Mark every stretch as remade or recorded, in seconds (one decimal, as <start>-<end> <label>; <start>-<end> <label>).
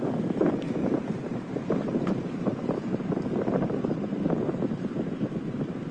0.0-0.8 recorded; 0.8-3.0 remade; 3.0-5.9 recorded